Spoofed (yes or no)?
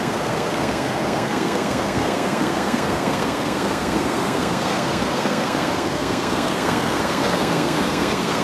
yes